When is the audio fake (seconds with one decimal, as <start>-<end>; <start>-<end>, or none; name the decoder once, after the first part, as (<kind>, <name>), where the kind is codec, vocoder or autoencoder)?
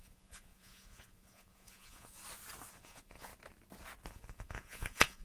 0.0-2.2 (vocoder, Vocos); 2.7-3.3; 4.1-5.2